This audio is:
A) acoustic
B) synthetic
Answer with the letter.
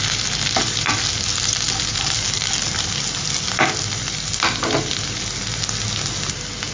A